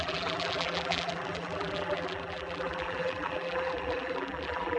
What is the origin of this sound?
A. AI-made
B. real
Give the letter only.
A